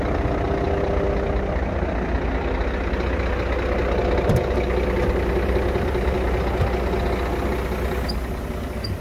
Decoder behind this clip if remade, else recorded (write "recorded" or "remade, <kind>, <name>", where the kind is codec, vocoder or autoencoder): recorded